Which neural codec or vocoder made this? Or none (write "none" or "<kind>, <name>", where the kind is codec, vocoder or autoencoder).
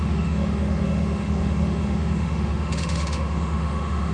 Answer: autoencoder, DAC-VAE